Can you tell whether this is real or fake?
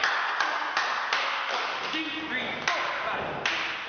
real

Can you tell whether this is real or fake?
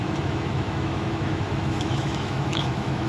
fake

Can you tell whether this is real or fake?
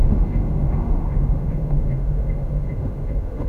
fake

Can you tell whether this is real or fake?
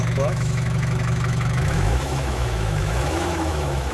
fake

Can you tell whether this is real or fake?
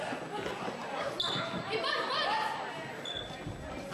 real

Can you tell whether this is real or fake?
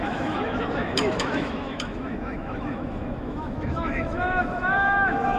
fake